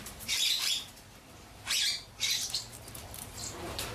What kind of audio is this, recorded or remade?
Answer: remade